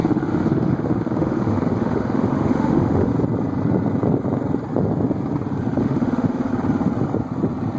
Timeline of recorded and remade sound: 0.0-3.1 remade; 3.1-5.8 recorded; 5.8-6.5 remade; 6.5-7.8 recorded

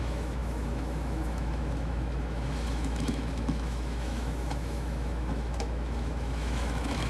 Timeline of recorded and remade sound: 0.0-7.1 remade

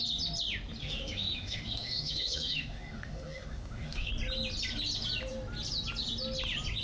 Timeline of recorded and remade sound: 0.0-0.8 recorded; 0.8-4.1 remade; 4.1-6.8 recorded

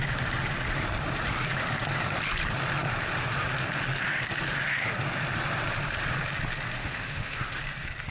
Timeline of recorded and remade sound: 0.0-6.8 recorded; 6.8-7.6 remade; 7.6-8.1 recorded

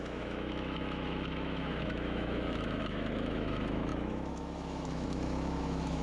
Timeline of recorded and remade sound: 0.0-6.0 remade

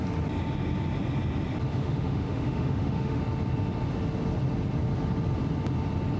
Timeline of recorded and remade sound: 0.0-1.7 recorded; 1.7-3.2 remade; 3.2-6.2 recorded

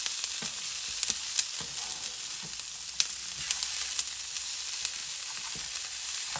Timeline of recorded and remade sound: 0.0-6.4 recorded

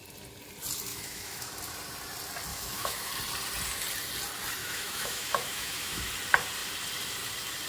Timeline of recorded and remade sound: 0.0-0.9 recorded; 0.9-1.5 remade; 1.5-2.5 recorded; 2.5-3.1 remade; 3.1-4.6 recorded; 4.6-6.1 remade; 6.1-7.7 recorded